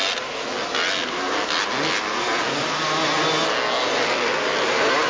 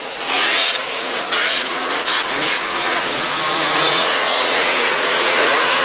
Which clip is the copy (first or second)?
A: second